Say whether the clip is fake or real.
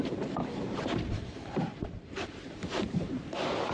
fake